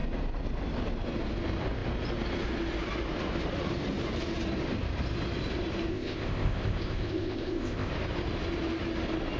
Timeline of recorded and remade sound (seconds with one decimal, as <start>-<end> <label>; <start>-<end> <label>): 0.0-5.9 recorded; 5.9-7.9 remade; 7.9-9.4 recorded